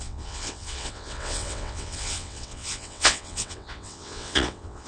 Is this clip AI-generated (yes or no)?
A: yes